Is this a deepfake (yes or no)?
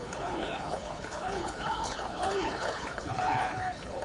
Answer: yes